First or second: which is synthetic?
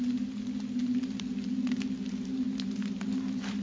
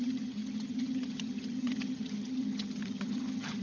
second